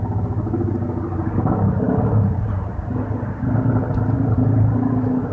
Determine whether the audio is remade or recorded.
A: recorded